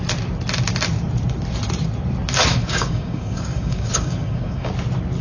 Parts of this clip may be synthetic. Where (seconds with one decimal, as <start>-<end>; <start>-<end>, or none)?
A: 2.5-4.7